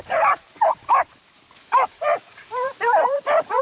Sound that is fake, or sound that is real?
fake